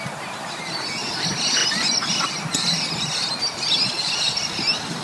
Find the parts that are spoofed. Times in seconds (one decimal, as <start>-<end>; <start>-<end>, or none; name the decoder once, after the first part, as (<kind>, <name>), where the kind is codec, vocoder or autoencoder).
none